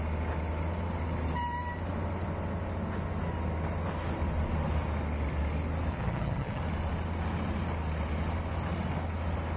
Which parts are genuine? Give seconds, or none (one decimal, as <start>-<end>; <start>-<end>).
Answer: 0.0-5.9; 6.6-9.6